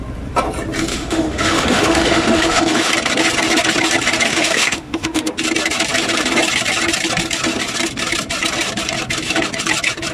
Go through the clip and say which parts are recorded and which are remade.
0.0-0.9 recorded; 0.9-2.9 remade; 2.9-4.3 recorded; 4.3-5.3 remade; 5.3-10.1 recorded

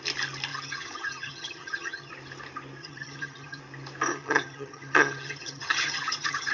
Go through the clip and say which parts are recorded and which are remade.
0.0-0.5 recorded; 0.5-2.1 remade; 2.1-2.8 recorded; 2.8-3.6 remade; 3.6-4.1 recorded; 4.1-6.5 remade

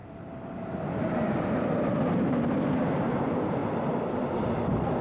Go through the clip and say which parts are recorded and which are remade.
0.0-1.9 remade; 1.9-3.6 recorded; 3.6-4.2 remade; 4.2-5.0 recorded

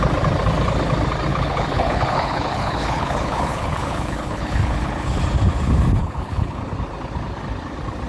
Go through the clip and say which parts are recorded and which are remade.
0.0-1.3 recorded; 1.3-5.2 remade; 5.2-6.0 recorded; 6.0-6.6 remade; 6.6-8.1 recorded

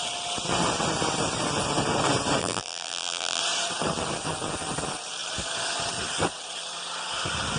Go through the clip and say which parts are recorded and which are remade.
0.0-2.4 recorded; 2.4-3.4 remade; 3.4-7.6 recorded

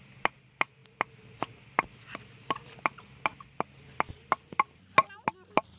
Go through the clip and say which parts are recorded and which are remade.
0.0-5.8 recorded

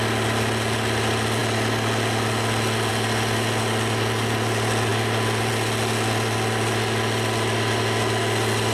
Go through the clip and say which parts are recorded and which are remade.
0.0-8.7 recorded